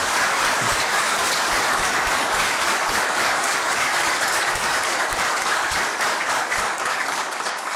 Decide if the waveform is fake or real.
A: fake